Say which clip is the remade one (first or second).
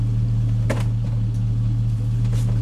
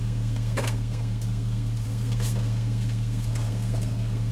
second